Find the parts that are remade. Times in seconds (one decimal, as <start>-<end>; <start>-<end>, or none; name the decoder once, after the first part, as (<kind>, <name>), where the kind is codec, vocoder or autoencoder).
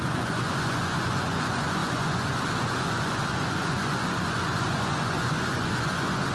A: 0.0-6.3 (vocoder, Vocos)